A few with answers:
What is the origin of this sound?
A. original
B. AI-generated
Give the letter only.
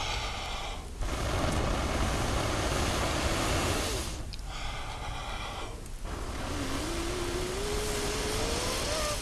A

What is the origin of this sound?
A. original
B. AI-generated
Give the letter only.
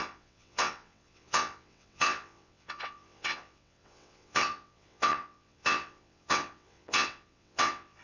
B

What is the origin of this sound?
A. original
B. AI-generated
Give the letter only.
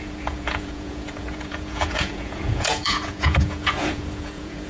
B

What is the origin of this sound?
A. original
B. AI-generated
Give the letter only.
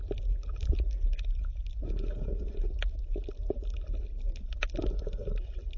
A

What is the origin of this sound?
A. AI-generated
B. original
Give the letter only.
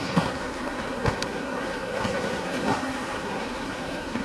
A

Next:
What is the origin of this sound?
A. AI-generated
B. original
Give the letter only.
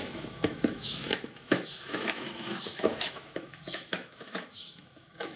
A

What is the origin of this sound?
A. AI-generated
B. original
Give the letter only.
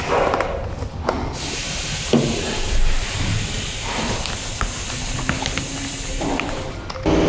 B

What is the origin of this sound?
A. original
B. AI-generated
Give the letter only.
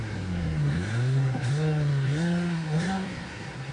B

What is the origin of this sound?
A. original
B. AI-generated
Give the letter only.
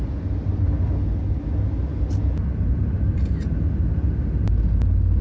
A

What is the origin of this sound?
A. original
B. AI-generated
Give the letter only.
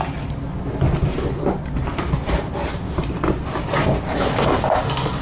A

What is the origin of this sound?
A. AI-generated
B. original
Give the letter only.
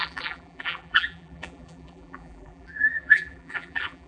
A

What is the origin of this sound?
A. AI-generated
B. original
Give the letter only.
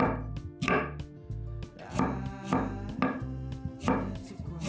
B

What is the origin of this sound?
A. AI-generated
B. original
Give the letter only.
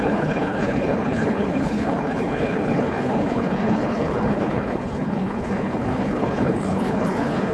A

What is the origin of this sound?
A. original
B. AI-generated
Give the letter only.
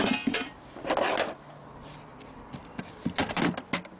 A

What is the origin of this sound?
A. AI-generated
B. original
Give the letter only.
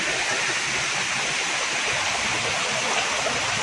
B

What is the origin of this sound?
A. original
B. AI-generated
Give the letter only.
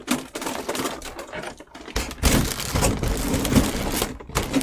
A